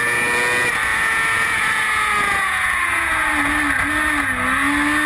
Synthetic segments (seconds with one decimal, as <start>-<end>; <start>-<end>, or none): 0.9-3.3